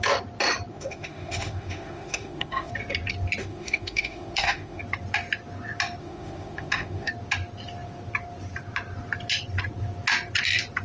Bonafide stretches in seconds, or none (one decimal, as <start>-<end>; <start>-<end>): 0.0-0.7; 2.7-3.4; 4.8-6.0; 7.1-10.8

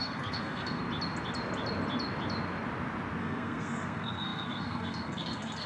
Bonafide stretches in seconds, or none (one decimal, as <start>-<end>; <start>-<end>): 0.8-3.2

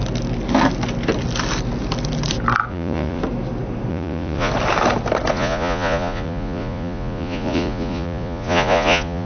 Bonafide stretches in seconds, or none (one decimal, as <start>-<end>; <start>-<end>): 0.0-2.7; 3.2-3.9; 4.5-5.3